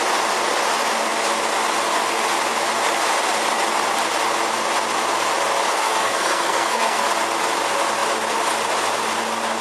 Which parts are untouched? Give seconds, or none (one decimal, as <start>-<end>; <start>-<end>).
0.0-5.7; 7.1-9.6